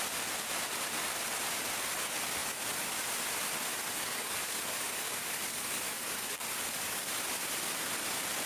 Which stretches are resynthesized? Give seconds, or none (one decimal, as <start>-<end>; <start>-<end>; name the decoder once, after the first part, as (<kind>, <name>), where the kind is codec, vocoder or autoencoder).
3.7-7.1 (codec, DAC)